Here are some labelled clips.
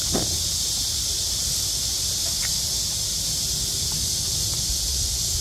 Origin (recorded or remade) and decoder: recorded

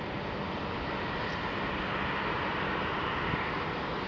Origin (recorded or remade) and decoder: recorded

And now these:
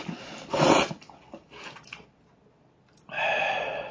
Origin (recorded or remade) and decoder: recorded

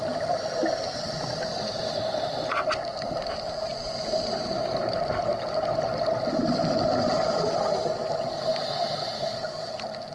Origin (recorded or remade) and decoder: recorded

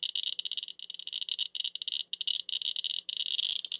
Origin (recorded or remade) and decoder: recorded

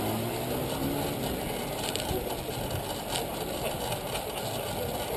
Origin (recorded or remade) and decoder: recorded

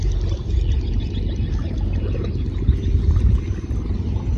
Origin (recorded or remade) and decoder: recorded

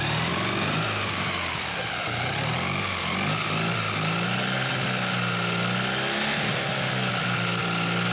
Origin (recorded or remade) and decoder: recorded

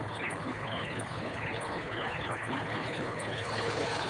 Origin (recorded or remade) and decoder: remade, codec, HILCodec